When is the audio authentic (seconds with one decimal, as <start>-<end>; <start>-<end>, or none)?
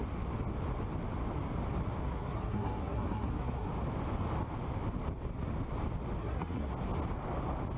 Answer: 0.0-2.0; 3.7-6.2; 6.7-7.8